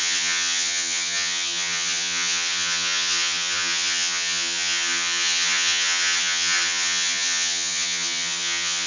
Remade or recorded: remade